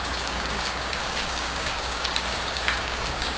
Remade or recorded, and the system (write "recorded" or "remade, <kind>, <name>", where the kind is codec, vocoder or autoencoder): remade, codec, DAC